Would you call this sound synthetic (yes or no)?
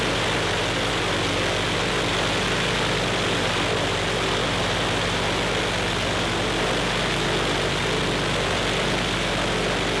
no